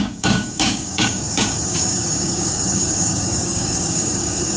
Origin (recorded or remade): remade